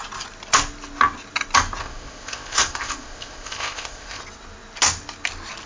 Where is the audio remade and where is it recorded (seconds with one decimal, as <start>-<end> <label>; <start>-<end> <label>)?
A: 0.0-1.8 recorded; 1.8-4.2 remade; 4.2-5.7 recorded